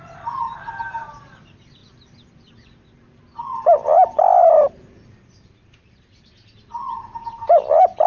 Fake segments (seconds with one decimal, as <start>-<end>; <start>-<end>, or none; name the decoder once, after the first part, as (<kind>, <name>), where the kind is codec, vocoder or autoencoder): none